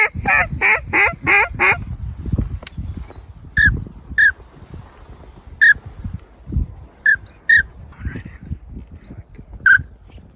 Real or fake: real